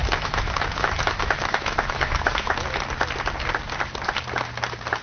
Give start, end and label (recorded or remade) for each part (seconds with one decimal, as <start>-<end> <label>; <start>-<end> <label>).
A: 0.0-2.5 remade; 2.5-5.0 recorded